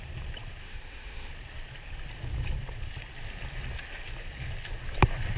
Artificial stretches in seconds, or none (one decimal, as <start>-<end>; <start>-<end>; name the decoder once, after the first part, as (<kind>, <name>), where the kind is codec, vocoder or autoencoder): 0.6-1.3 (autoencoder, DAC-VAE)